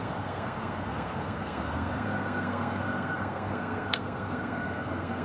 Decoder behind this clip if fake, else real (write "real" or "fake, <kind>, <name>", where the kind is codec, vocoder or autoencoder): fake, codec, SNAC